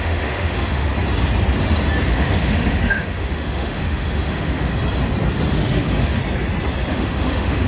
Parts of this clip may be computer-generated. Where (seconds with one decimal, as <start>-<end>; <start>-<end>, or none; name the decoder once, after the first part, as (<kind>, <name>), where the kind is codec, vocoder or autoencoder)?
0.0-0.9 (autoencoder, DAC-VAE); 2.1-4.7; 5.5-6.2; 6.9-7.7